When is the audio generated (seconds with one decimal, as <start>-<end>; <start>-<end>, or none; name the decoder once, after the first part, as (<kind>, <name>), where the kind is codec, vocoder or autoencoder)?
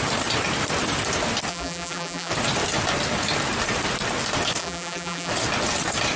1.5-2.3 (vocoder, BigVGAN v2); 4.6-5.3